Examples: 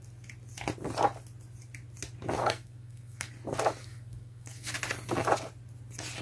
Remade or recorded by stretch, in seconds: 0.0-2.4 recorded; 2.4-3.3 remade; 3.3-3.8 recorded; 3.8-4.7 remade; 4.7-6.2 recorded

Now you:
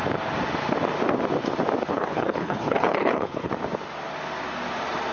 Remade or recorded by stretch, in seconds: 0.0-1.9 recorded; 1.9-3.5 remade; 3.5-5.1 recorded

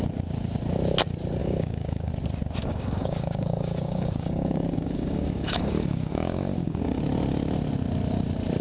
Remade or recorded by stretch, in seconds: 0.0-1.4 recorded; 1.4-2.1 remade; 2.1-2.6 recorded; 2.6-7.0 remade; 7.0-8.6 recorded

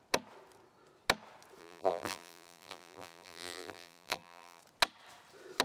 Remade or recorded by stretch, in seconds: 0.0-1.6 recorded; 1.6-4.6 remade; 4.6-5.6 recorded

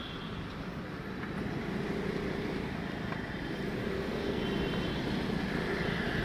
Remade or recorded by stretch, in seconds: 0.0-3.8 recorded; 3.8-4.4 remade; 4.4-6.2 recorded

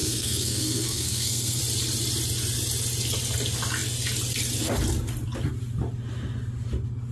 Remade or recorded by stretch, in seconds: 0.0-1.6 remade; 1.6-7.1 recorded

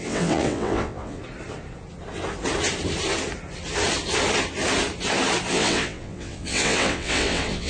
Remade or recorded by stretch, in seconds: 0.0-1.2 remade; 1.2-5.5 recorded; 5.5-7.7 remade

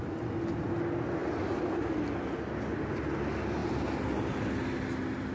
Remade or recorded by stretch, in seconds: 0.0-5.3 recorded